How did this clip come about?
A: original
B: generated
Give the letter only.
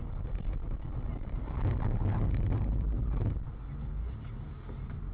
A